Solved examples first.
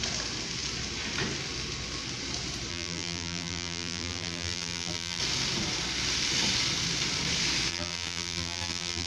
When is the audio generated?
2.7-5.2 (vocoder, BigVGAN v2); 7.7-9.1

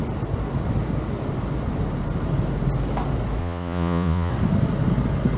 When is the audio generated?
3.4-4.3 (vocoder, Vocos)

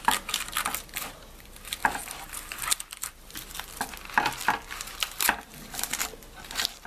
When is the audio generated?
none